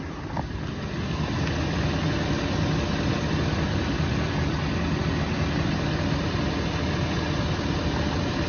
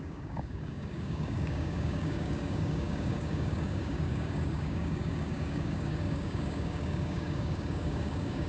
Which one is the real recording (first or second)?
first